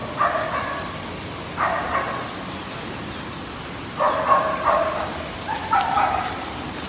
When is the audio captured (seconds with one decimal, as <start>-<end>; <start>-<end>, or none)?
0.0-6.9